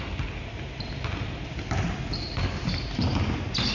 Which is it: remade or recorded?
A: recorded